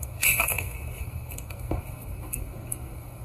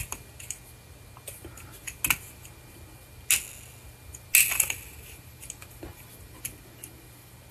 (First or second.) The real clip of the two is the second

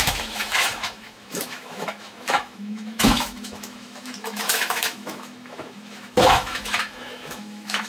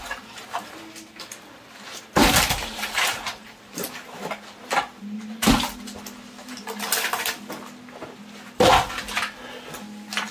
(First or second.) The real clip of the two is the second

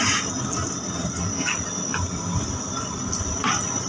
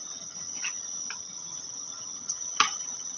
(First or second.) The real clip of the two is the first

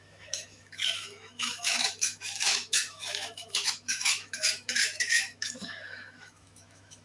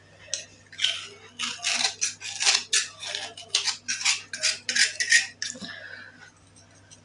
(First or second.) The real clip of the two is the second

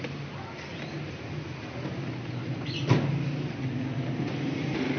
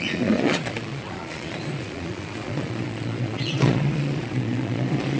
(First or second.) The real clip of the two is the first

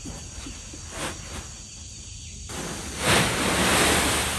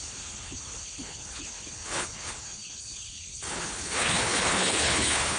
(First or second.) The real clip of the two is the first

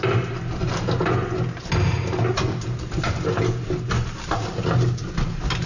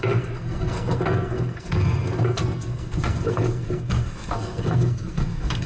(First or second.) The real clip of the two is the first